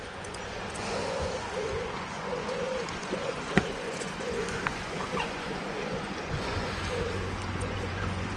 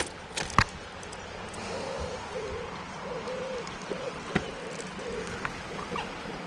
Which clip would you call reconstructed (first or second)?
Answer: first